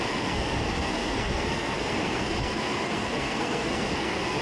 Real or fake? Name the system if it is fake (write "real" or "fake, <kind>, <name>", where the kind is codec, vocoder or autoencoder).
fake, codec, SNAC